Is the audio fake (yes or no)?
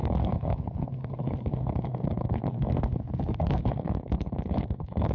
yes